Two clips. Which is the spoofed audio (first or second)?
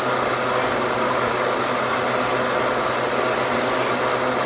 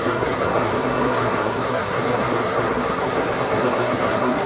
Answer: second